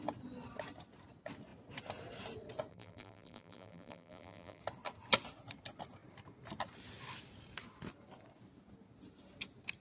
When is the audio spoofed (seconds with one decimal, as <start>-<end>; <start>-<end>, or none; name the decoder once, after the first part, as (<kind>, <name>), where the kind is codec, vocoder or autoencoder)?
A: 2.7-4.6 (vocoder, BigVGAN v2)